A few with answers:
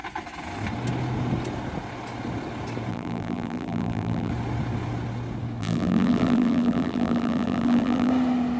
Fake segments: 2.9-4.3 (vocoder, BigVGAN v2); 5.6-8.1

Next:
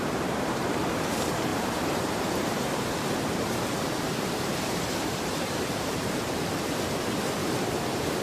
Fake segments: 0.0-7.4 (vocoder, BigVGAN v2)

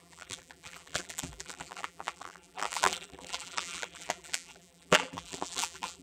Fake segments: 0.0-6.0 (vocoder, BigVGAN v2)